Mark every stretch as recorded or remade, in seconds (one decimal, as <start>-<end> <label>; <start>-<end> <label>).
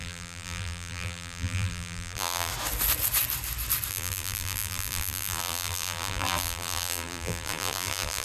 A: 0.0-2.5 remade; 2.5-3.9 recorded; 3.9-8.2 remade